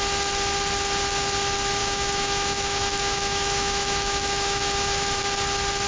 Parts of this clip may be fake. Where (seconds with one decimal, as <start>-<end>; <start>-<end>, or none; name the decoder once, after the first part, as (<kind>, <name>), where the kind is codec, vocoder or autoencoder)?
1.8-5.2 (autoencoder, DAC-VAE)